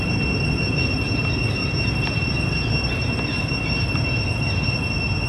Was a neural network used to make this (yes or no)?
no